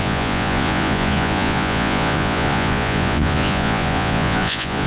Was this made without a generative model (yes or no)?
no